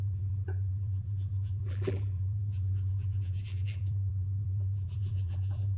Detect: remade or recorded remade